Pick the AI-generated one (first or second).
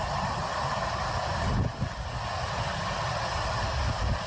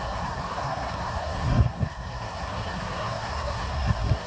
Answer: second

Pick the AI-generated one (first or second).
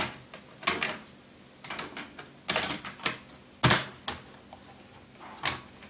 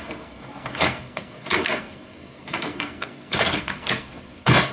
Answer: second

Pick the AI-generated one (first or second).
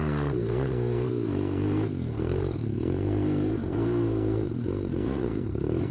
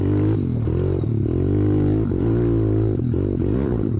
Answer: first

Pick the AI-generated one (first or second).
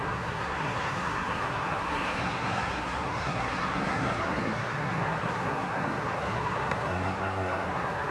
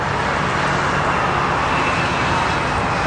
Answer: first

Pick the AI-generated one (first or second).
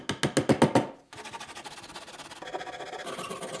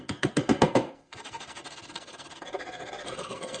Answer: second